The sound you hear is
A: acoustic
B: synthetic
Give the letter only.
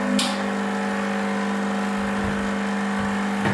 A